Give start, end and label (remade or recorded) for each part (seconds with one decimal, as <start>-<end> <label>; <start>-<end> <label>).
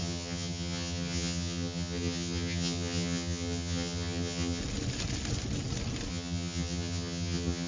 0.0-4.6 remade; 4.6-6.1 recorded; 6.1-7.7 remade